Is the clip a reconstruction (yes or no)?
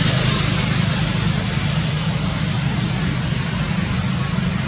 no